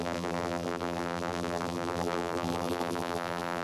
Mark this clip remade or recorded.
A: remade